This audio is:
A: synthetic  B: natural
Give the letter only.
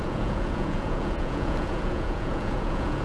A